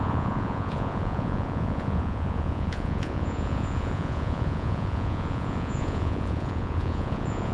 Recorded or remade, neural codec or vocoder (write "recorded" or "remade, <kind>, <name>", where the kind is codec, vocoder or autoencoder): remade, vocoder, Vocos